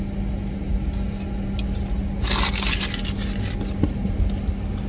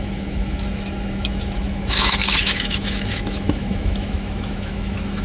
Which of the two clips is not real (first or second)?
second